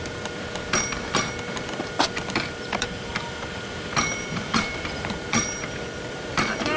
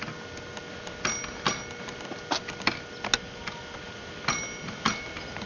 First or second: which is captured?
second